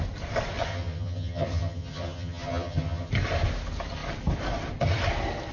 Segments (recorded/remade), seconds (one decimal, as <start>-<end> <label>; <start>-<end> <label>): 0.0-0.7 recorded; 0.7-3.1 remade; 3.1-5.5 recorded